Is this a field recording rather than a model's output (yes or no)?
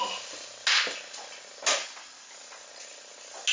yes